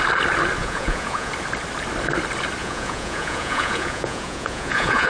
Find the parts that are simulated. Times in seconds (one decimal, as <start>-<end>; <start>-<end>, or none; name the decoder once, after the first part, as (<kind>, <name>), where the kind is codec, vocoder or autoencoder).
0.6-1.3 (vocoder, Vocos); 2.6-5.1